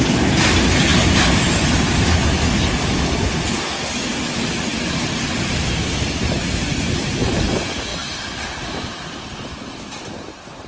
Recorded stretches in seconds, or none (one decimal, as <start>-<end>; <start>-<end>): 0.0-10.7